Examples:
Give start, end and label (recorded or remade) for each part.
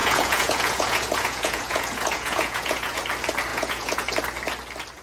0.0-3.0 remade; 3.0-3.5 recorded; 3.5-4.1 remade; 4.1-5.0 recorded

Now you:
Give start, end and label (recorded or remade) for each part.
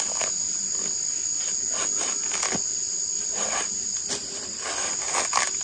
0.0-5.6 recorded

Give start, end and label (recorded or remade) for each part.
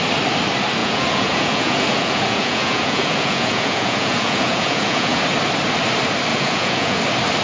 0.0-0.8 recorded; 0.8-5.2 remade; 5.2-6.3 recorded; 6.3-7.0 remade; 7.0-7.4 recorded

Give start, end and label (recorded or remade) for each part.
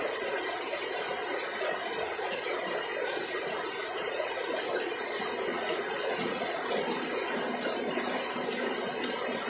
0.0-5.5 recorded; 5.5-6.7 remade; 6.7-9.5 recorded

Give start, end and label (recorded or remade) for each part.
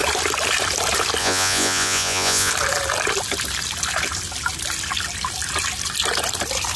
0.0-1.2 recorded; 1.2-2.5 remade; 2.5-6.8 recorded